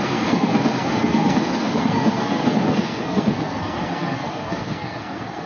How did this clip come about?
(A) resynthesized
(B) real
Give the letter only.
A